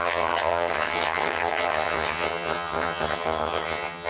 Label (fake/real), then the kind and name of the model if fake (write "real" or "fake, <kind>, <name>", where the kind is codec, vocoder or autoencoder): fake, vocoder, HiFi-GAN